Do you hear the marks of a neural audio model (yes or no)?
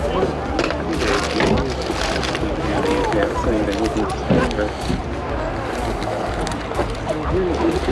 no